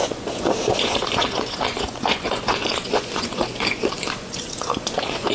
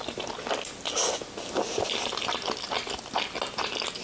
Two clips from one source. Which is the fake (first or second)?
first